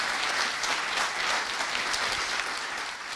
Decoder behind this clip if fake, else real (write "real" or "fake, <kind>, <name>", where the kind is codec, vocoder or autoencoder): real